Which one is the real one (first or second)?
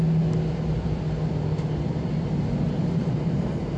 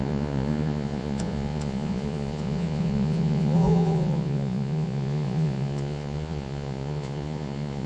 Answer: first